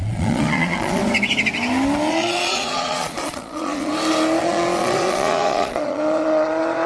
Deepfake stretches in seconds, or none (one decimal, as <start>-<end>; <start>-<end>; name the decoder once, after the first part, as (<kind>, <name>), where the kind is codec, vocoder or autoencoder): 0.0-1.0 (vocoder, Vocos); 2.1-3.9; 4.4-6.9